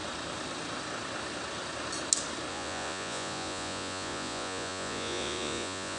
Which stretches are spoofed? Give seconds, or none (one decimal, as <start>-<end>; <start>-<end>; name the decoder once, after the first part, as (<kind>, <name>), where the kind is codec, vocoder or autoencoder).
2.5-6.0 (vocoder, Vocos)